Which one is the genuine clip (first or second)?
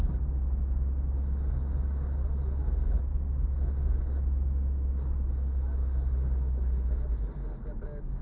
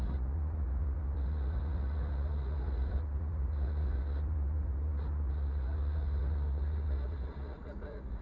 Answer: first